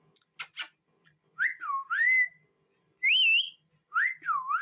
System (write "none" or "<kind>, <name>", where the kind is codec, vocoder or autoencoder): none